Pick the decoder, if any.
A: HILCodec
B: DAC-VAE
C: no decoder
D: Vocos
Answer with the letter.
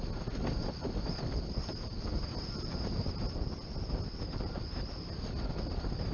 C